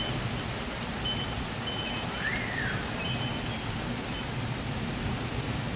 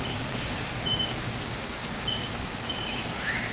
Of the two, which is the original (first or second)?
first